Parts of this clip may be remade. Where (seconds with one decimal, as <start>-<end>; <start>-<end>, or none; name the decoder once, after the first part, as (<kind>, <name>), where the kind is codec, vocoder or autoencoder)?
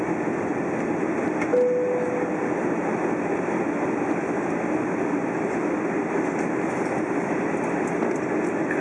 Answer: none